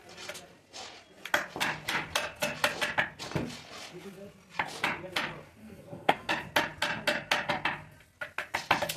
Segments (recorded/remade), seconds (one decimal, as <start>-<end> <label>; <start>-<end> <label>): 0.0-5.6 recorded; 5.6-6.3 remade; 6.3-9.0 recorded